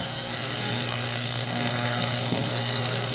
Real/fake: fake